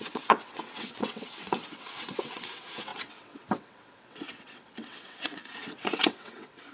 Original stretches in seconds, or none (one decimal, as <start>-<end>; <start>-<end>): none